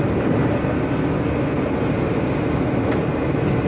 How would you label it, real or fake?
real